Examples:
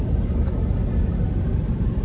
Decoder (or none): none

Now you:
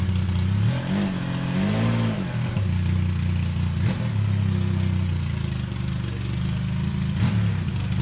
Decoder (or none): none